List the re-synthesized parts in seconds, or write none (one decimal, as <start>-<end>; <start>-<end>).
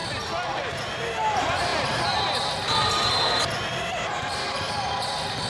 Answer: none